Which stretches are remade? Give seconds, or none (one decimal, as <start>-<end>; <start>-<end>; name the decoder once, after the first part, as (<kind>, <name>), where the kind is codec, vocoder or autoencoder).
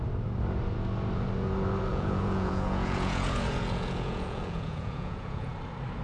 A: 1.9-5.5 (vocoder, Vocos)